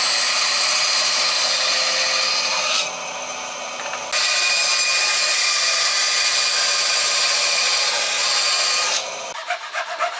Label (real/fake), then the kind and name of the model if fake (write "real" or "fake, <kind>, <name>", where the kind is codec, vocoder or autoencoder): real